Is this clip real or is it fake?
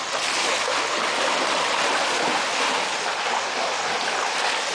real